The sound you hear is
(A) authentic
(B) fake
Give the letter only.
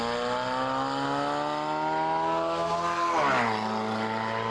A